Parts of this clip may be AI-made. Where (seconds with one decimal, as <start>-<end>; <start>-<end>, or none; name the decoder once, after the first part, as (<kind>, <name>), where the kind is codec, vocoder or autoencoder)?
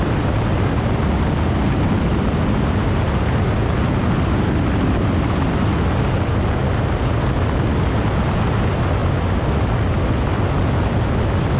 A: none